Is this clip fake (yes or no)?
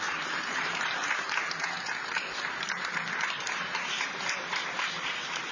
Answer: yes